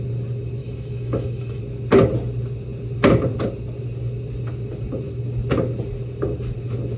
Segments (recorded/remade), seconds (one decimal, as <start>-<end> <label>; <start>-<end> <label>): 0.0-0.6 recorded; 0.6-1.6 remade; 1.6-7.0 recorded